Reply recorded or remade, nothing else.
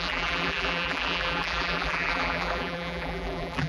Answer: remade